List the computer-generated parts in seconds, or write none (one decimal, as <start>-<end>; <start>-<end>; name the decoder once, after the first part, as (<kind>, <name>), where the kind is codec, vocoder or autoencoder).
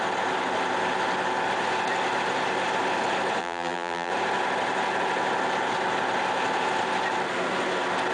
3.4-4.1 (vocoder, BigVGAN v2)